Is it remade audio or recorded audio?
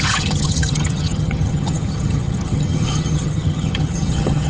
remade